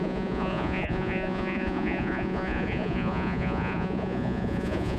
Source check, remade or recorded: remade